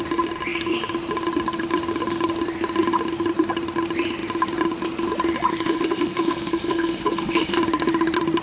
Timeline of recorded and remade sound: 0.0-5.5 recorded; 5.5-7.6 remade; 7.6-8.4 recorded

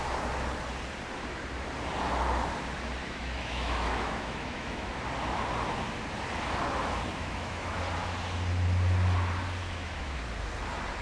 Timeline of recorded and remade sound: 0.0-3.0 recorded; 3.0-4.9 remade; 4.9-7.2 recorded; 7.2-7.8 remade; 7.8-9.6 recorded; 9.6-10.2 remade; 10.2-11.0 recorded

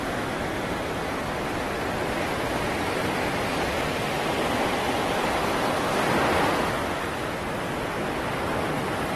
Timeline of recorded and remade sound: 0.0-9.2 recorded